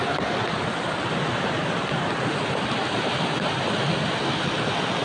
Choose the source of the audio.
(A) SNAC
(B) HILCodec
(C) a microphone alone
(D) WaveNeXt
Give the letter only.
C